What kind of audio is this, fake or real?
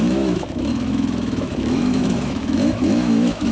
fake